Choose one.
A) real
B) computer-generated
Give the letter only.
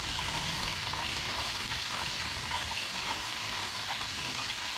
B